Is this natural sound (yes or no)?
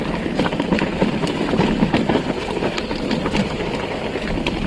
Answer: no